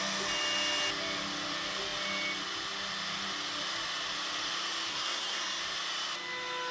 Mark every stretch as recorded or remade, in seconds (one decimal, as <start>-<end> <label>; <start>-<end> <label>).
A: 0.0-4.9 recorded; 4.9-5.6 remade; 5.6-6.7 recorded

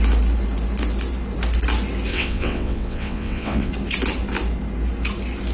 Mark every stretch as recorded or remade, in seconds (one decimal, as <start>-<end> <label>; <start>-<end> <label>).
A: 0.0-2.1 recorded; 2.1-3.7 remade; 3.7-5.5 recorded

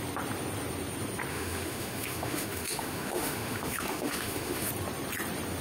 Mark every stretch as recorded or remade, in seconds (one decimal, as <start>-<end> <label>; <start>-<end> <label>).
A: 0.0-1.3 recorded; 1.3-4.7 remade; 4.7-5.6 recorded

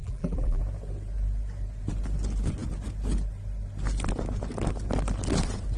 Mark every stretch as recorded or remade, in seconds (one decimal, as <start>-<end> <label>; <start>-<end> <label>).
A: 0.0-0.6 remade; 0.6-5.8 recorded

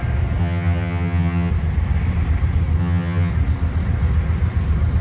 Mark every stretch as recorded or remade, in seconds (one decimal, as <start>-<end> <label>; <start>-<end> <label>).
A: 0.0-0.4 recorded; 0.4-1.5 remade; 1.5-2.8 recorded; 2.8-3.3 remade; 3.3-5.0 recorded

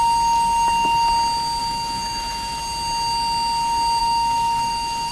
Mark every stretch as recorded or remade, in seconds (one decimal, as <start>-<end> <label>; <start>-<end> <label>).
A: 0.0-1.6 recorded; 1.6-2.6 remade; 2.6-4.0 recorded; 4.0-5.1 remade